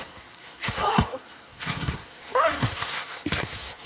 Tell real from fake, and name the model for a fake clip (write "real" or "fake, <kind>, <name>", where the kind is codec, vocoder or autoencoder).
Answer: fake, codec, SNAC